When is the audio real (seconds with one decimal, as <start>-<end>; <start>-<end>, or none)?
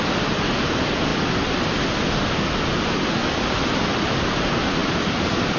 0.0-5.6